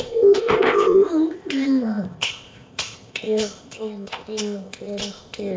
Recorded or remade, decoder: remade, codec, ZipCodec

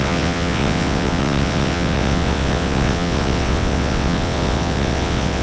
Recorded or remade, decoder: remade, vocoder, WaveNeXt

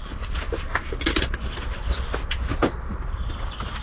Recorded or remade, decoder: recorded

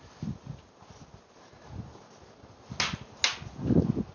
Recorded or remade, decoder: recorded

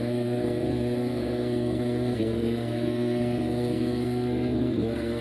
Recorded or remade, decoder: remade, codec, SNAC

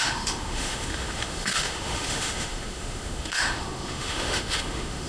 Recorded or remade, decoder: remade, autoencoder, DAC-VAE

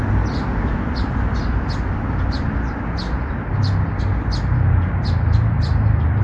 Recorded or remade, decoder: recorded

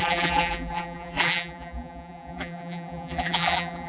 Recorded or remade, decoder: remade, vocoder, BigVGAN v2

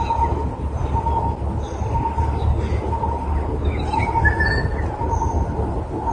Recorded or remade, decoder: recorded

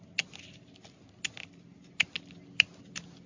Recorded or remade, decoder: recorded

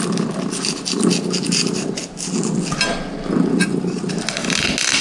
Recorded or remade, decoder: recorded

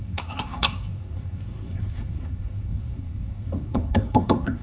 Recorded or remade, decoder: remade, codec, SNAC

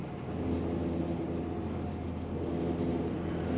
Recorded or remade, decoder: recorded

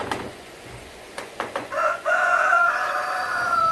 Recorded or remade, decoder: remade, vocoder, Vocos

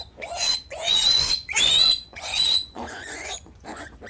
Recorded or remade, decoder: remade, vocoder, Vocos